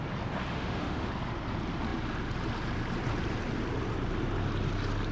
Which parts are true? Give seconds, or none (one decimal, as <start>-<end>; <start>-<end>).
0.0-0.5; 1.1-5.1